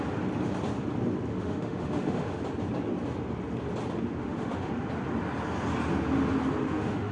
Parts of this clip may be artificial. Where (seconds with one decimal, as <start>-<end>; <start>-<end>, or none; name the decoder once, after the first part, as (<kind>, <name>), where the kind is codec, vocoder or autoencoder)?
1.3-2.4 (autoencoder, DAC-VAE); 4.2-4.7; 6.6-7.1